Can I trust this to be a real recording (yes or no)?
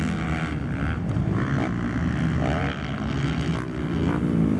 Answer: yes